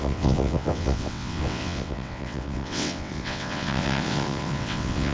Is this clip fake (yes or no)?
yes